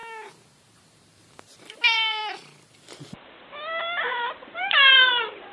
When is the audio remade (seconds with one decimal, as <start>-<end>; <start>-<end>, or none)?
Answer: 0.5-2.2; 2.7-5.5